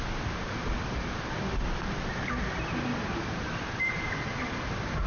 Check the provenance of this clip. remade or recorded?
recorded